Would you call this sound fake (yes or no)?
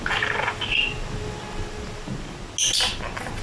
no